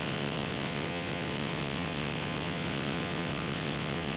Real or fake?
fake